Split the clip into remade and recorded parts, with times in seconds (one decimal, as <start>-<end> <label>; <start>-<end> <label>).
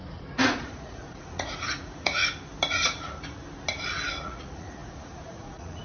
0.0-2.2 remade; 2.2-2.7 recorded; 2.7-3.4 remade; 3.4-4.2 recorded; 4.2-5.8 remade